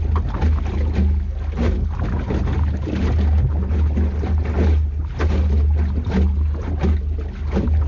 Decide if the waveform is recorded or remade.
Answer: recorded